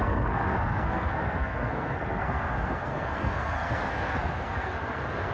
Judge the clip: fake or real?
fake